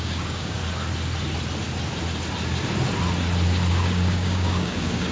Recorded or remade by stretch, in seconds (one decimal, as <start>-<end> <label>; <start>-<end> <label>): 0.0-0.6 remade; 0.6-3.7 recorded; 3.7-5.1 remade